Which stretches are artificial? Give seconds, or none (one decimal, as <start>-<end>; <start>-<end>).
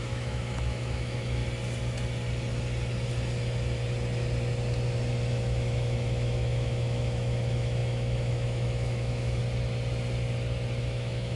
0.0-1.4; 5.3-9.4; 10.8-11.4